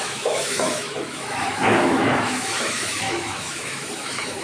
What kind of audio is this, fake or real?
fake